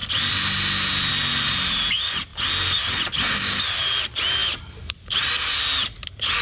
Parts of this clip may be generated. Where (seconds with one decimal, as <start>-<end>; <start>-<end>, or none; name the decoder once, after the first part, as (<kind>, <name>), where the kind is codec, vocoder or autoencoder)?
4.4-5.3 (vocoder, BigVGAN v2)